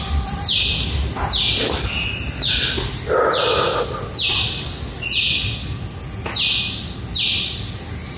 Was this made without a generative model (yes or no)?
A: yes